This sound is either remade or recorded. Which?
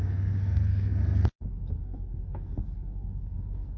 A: remade